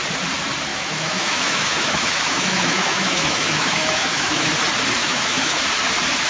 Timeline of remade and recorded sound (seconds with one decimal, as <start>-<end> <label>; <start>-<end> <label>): 0.0-0.7 recorded; 0.7-4.5 remade; 4.5-5.0 recorded; 5.0-5.6 remade; 5.6-6.3 recorded